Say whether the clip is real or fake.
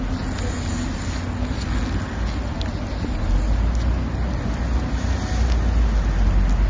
real